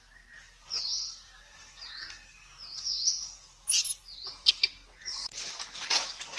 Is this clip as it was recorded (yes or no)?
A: yes